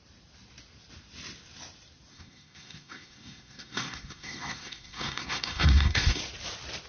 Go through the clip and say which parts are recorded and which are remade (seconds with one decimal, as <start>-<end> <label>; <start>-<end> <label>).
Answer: 0.0-2.1 recorded; 2.1-6.2 remade; 6.2-6.9 recorded